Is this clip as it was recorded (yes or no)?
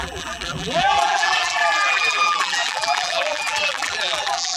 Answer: no